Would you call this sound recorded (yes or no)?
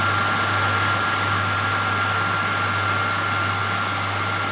yes